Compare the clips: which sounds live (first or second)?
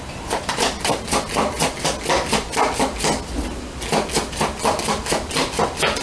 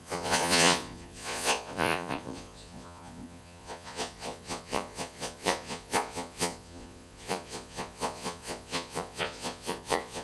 first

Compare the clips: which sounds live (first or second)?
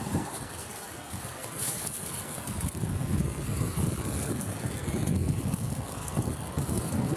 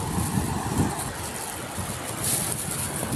second